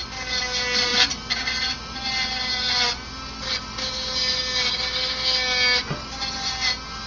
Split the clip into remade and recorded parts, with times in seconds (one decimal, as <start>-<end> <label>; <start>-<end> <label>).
0.0-7.1 recorded